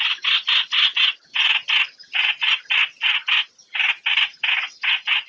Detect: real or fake real